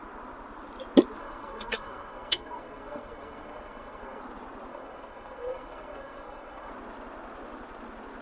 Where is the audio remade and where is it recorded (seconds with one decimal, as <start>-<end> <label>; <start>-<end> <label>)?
0.0-1.2 recorded; 1.2-4.2 remade; 4.2-4.7 recorded; 4.7-6.7 remade; 6.7-8.2 recorded